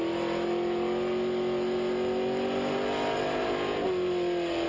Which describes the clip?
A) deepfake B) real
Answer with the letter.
B